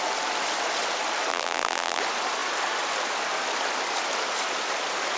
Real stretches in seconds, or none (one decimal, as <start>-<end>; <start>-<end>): 0.0-1.3; 2.0-5.2

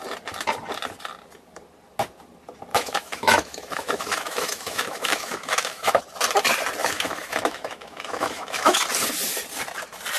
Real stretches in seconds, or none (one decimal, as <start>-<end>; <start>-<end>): 0.0-2.7; 6.0-6.8; 8.8-10.2

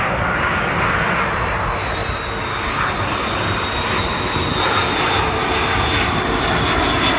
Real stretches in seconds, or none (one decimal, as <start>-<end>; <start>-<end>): 0.0-7.2